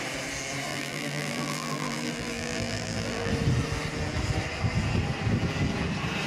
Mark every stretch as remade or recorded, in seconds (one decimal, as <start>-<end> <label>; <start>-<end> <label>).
0.0-0.7 recorded; 0.7-3.3 remade; 3.3-6.3 recorded